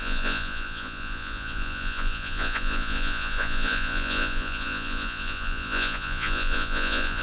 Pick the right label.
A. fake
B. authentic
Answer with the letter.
A